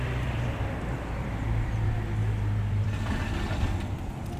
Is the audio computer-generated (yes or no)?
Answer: yes